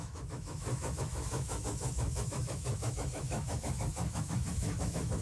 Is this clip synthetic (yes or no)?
yes